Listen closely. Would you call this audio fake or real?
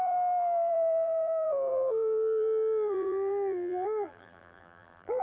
fake